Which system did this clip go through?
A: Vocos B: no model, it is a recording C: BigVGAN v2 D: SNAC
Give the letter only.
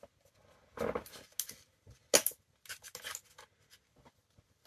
B